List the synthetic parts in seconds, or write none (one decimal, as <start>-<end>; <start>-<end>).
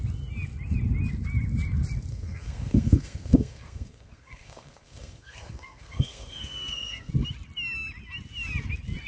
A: 2.1-7.1